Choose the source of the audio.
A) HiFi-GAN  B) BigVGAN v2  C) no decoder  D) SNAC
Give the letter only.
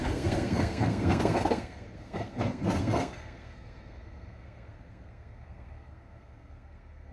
D